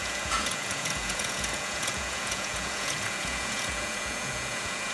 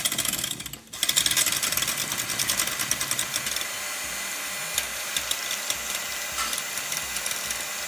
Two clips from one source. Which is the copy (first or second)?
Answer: first